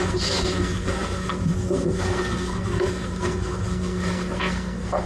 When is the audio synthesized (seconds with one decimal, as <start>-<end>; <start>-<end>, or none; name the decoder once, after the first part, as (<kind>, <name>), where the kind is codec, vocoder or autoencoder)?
0.0-5.1 (codec, SNAC)